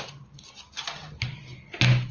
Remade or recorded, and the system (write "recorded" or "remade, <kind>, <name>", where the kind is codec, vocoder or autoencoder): recorded